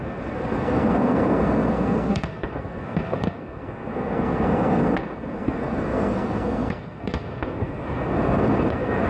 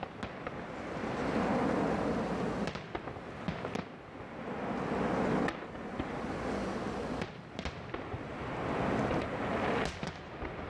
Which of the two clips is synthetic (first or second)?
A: first